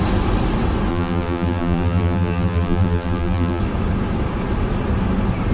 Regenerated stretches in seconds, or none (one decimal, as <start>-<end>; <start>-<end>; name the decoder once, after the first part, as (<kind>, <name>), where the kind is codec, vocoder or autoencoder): 0.9-3.6 (vocoder, BigVGAN v2)

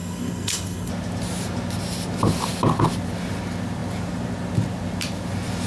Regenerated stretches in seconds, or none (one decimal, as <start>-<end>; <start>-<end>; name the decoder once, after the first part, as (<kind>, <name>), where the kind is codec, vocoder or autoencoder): 0.0-0.9 (codec, SNAC)

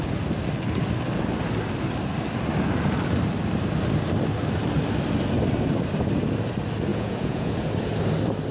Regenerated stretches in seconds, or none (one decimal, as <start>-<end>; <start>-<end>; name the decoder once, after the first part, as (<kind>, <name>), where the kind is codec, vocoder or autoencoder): 6.9-7.5 (vocoder, Vocos)

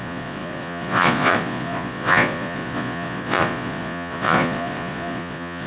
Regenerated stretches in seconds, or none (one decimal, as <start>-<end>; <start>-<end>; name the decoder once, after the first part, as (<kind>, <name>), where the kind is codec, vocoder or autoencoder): 0.0-5.7 (vocoder, Vocos)

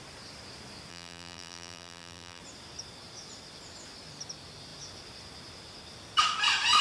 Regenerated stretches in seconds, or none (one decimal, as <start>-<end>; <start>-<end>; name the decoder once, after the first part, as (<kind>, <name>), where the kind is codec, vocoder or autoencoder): 0.9-2.4 (vocoder, BigVGAN v2)

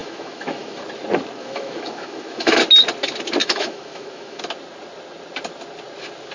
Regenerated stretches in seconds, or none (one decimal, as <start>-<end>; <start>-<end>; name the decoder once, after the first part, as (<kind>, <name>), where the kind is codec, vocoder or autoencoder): 0.0-0.8 (autoencoder, DAC-VAE); 1.4-2.6; 3.4-4.4